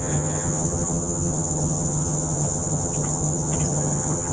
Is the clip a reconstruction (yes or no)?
yes